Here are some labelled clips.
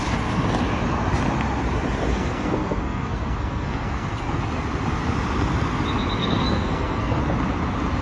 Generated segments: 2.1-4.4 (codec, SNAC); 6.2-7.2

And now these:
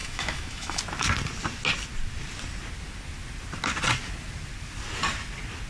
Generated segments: 0.0-0.8 (autoencoder, DAC-VAE)

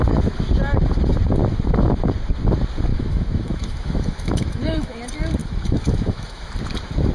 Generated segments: 2.9-5.0 (autoencoder, DAC-VAE); 5.4-6.5

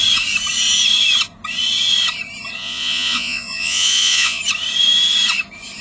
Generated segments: 2.6-4.4 (vocoder, Vocos)

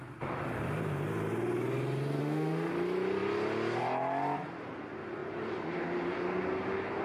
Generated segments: 2.2-2.7 (autoencoder, DAC-VAE)